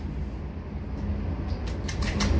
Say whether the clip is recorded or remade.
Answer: recorded